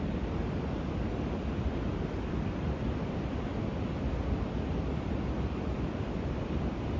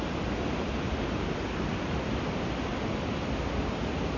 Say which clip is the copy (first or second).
first